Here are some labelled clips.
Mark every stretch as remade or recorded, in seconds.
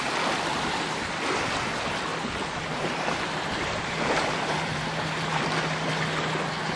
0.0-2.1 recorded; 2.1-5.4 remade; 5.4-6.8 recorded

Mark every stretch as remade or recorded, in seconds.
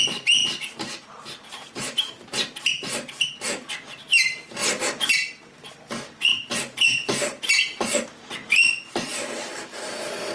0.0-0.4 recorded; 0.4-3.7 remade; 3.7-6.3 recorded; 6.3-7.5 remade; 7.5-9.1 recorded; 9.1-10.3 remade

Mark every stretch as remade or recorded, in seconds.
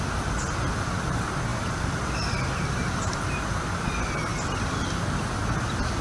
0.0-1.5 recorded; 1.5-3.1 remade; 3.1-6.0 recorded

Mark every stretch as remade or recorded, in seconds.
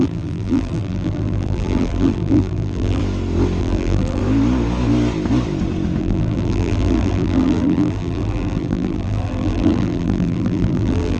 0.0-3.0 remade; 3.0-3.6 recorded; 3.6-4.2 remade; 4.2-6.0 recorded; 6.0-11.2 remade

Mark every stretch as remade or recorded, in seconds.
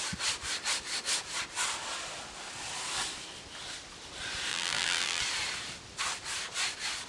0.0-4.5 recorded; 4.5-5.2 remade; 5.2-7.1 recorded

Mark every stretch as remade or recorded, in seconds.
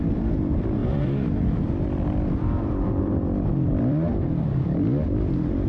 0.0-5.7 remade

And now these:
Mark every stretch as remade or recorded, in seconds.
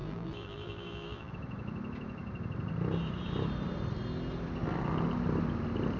0.0-1.3 remade; 1.3-6.0 recorded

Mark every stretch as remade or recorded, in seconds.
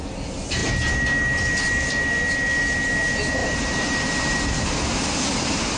0.0-3.4 recorded; 3.4-5.8 remade